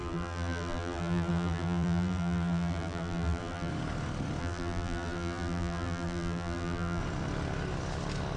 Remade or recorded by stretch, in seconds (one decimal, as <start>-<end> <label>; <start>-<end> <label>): 0.0-3.7 remade; 3.7-4.4 recorded; 4.4-7.0 remade; 7.0-8.4 recorded